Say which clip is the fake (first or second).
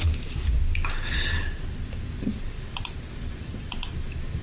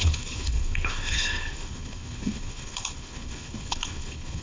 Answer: second